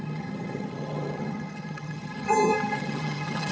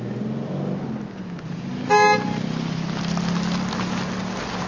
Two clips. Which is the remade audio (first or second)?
first